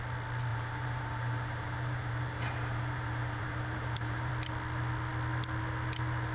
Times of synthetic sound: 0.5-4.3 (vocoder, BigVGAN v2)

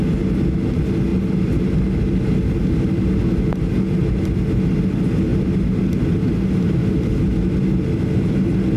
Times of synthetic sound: none

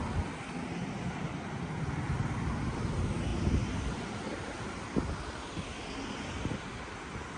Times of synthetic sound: 3.3-5.1 (vocoder, BigVGAN v2)

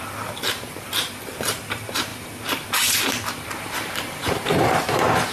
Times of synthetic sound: 0.0-2.1 (vocoder, BigVGAN v2); 3.3-5.3

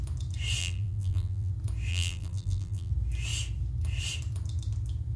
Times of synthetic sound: 0.6-1.5 (vocoder, BigVGAN v2); 1.9-2.9